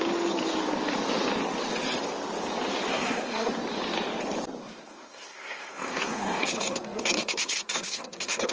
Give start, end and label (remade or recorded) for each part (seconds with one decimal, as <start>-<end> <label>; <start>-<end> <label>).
0.0-2.9 recorded; 2.9-3.5 remade; 3.5-4.6 recorded; 4.6-8.5 remade